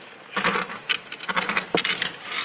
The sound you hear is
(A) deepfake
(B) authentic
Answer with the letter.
B